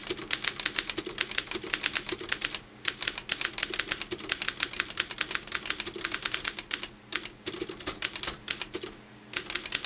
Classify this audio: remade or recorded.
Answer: recorded